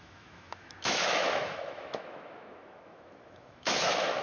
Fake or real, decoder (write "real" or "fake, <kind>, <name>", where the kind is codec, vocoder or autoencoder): fake, autoencoder, DAC-VAE